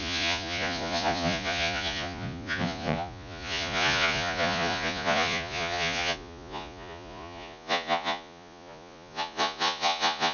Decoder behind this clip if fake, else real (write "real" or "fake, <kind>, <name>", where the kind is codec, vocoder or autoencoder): fake, vocoder, Vocos